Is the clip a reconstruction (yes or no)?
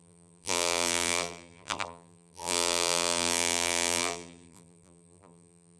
yes